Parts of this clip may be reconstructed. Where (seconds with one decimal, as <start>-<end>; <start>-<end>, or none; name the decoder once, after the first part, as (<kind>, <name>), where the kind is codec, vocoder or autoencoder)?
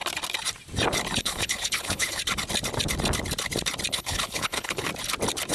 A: 1.2-2.2 (codec, HILCodec); 3.9-4.9